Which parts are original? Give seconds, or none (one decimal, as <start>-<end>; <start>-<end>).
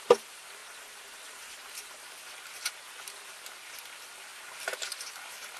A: 0.0-0.6; 2.0-5.6